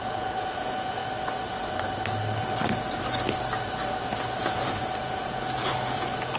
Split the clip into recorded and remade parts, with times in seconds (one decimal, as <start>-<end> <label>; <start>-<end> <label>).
0.0-1.0 remade; 1.0-4.4 recorded; 4.4-6.4 remade